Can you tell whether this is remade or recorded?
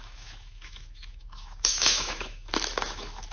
remade